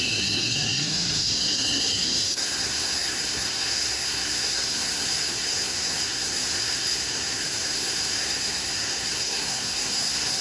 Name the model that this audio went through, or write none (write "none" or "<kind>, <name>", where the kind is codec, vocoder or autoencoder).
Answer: codec, SNAC